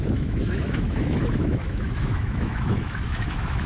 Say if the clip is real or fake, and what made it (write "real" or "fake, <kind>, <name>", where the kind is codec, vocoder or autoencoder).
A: fake, autoencoder, DAC-VAE